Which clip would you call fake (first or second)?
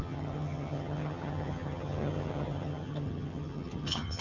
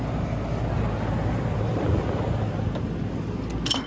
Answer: first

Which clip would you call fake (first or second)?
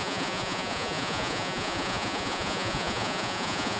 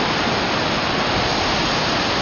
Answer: first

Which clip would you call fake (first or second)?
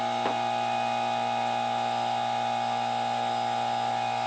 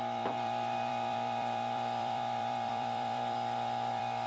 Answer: second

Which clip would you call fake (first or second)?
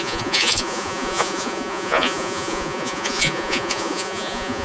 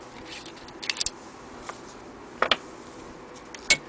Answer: first